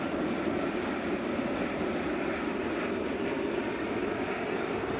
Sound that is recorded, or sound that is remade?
remade